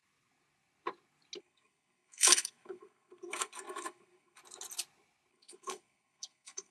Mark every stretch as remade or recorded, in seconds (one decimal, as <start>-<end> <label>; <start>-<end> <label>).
0.0-1.4 recorded; 1.4-4.4 remade; 4.4-5.3 recorded; 5.3-6.7 remade